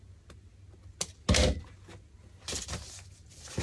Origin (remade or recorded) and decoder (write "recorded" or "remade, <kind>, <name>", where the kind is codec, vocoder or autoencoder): recorded